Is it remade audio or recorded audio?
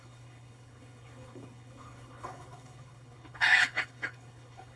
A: remade